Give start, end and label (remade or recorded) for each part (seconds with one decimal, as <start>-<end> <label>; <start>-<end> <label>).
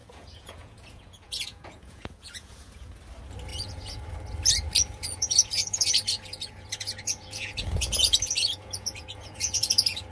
0.0-3.0 remade; 3.0-3.5 recorded; 3.5-4.0 remade; 4.0-4.8 recorded; 4.8-10.1 remade